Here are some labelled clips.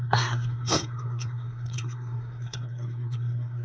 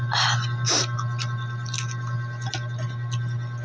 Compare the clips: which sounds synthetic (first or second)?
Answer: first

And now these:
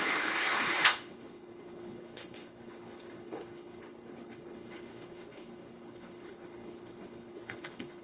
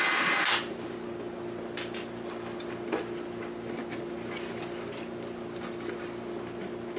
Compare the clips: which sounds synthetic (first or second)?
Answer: first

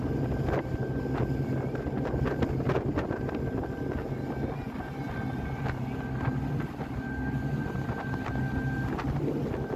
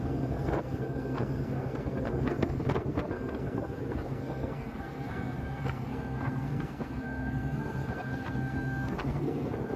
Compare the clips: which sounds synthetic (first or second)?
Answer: second